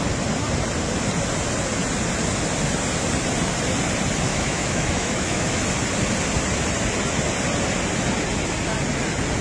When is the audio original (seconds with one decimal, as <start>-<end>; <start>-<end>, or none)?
0.0-4.3; 5.6-9.4